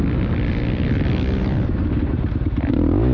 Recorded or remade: recorded